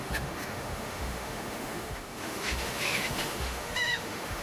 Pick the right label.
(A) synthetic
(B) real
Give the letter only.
A